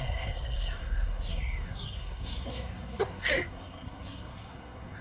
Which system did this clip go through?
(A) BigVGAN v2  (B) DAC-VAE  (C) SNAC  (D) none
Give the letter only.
C